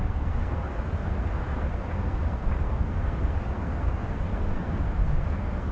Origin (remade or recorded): remade